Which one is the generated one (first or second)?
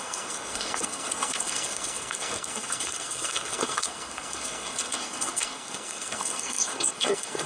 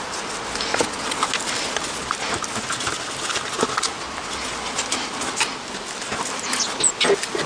first